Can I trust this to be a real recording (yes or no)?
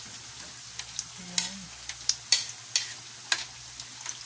yes